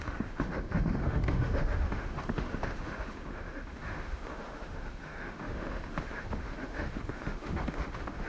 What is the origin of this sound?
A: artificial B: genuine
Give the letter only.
A